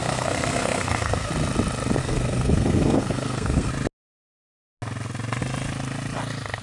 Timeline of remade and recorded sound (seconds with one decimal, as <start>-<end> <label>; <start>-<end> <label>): 0.0-1.3 remade; 1.3-2.0 recorded; 2.0-3.7 remade; 3.7-6.6 recorded